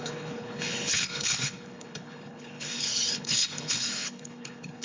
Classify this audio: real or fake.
fake